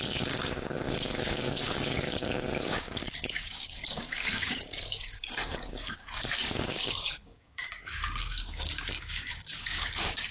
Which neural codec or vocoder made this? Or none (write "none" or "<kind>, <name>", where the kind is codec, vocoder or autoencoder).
codec, DAC